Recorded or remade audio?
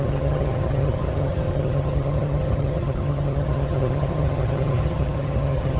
remade